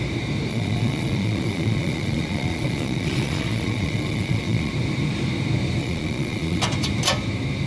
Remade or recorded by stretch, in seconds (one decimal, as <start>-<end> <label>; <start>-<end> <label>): 0.0-0.5 recorded; 0.5-4.7 remade; 4.7-5.8 recorded; 5.8-6.6 remade; 6.6-7.7 recorded